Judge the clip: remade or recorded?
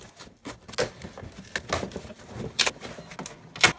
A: recorded